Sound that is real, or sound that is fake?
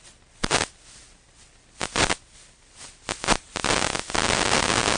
real